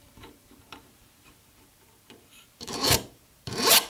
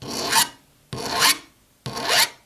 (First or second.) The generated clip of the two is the first